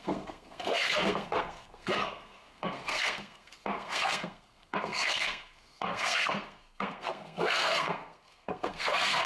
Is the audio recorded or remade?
remade